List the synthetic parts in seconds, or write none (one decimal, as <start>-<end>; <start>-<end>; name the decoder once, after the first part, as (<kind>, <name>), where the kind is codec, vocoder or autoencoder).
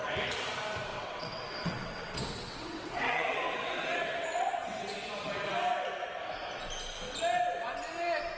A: 0.9-5.5 (vocoder, WaveNeXt)